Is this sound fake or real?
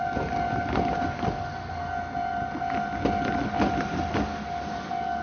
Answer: real